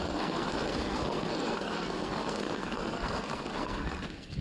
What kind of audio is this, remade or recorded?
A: remade